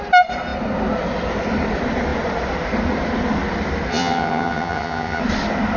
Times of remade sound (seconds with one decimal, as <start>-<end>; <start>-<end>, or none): 3.9-5.2